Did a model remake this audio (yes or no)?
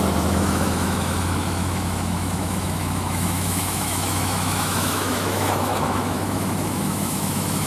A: yes